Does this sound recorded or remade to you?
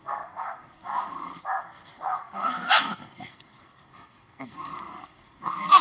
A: remade